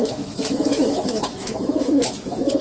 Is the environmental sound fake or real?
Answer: fake